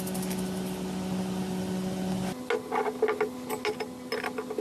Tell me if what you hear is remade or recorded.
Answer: recorded